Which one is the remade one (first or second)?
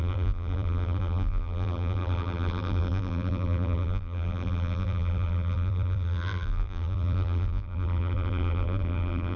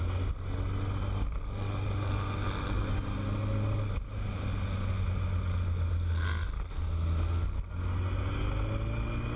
first